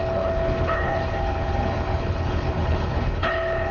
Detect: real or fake fake